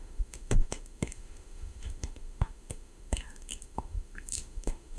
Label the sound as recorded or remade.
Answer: remade